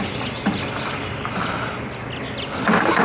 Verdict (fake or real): real